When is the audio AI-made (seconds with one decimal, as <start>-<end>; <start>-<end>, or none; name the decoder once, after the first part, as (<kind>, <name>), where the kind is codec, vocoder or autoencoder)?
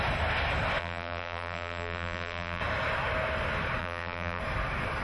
0.8-2.6 (vocoder, BigVGAN v2); 3.8-4.4